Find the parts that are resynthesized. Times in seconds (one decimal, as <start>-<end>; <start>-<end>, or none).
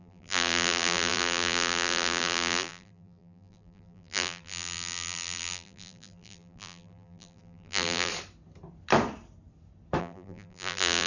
0.0-8.1; 10.0-11.1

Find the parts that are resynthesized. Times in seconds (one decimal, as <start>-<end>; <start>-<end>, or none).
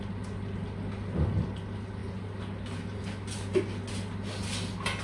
none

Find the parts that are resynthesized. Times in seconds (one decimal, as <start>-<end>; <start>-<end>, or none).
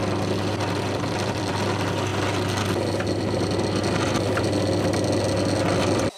0.8-2.1; 5.8-6.2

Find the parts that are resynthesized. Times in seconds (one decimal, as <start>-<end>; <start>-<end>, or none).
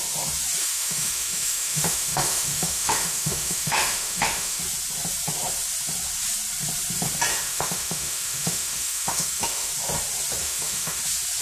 0.6-4.6; 7.3-9.7; 10.4-11.0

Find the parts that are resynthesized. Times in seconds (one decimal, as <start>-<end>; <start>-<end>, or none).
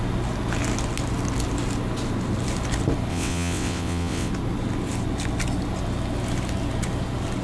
3.1-4.3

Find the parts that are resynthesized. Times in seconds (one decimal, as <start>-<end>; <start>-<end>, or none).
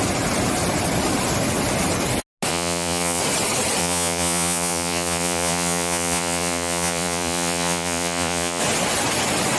2.5-3.2; 3.8-8.6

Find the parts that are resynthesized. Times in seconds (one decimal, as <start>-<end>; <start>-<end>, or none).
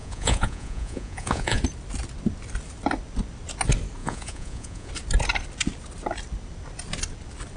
0.0-1.6; 4.0-4.9